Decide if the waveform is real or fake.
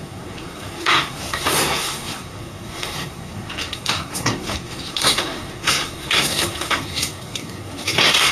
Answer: fake